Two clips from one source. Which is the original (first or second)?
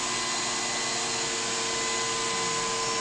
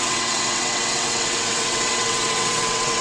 first